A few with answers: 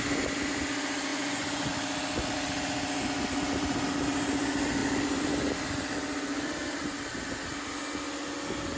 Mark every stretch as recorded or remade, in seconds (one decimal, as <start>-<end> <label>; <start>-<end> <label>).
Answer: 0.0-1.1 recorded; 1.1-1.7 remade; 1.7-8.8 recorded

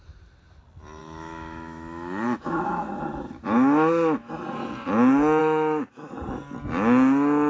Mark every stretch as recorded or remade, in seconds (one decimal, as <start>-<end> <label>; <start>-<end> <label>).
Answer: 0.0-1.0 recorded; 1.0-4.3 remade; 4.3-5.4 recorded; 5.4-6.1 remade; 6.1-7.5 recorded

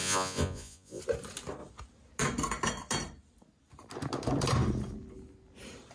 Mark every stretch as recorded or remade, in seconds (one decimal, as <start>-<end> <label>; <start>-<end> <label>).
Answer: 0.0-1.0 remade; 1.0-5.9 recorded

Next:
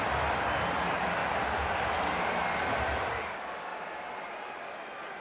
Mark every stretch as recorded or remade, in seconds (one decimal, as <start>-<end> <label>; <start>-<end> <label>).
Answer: 0.0-5.2 recorded

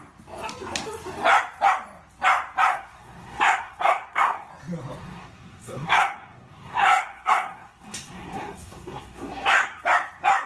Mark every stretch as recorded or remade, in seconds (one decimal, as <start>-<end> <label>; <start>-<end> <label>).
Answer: 0.0-2.7 recorded; 2.7-4.5 remade; 4.5-5.0 recorded; 5.0-9.8 remade; 9.8-10.5 recorded

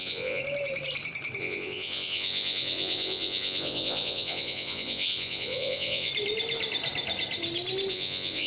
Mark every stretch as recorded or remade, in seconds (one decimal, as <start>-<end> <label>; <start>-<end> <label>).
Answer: 0.0-0.4 remade; 0.4-1.4 recorded; 1.4-6.1 remade; 6.1-7.9 recorded; 7.9-8.5 remade